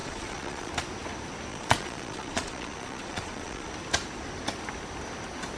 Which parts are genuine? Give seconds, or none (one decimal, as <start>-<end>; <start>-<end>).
0.7-1.5; 3.7-5.6